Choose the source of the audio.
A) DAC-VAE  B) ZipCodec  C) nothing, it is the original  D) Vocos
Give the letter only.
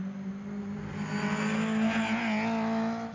C